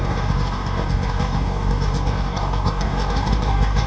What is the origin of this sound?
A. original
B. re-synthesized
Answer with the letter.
B